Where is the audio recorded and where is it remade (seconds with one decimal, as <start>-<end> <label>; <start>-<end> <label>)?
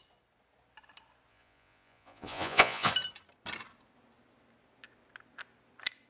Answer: 0.0-1.3 recorded; 1.3-2.9 remade; 2.9-6.1 recorded